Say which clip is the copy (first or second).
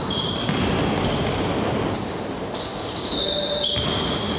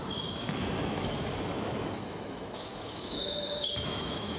second